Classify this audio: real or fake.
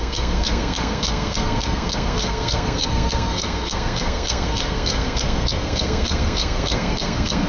fake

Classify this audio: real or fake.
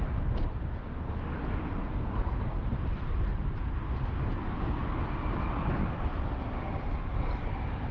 real